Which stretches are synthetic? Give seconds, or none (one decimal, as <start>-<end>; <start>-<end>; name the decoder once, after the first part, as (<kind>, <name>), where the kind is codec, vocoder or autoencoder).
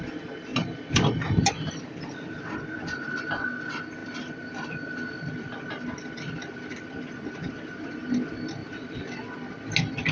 0.5-1.8 (vocoder, BigVGAN v2); 4.0-8.0; 8.6-9.2